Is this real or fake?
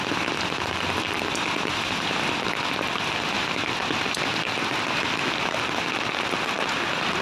real